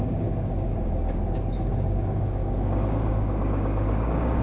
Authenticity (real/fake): fake